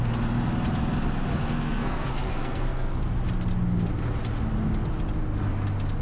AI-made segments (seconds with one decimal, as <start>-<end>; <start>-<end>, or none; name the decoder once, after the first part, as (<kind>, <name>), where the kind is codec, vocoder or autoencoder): 1.3-3.0 (codec, SNAC)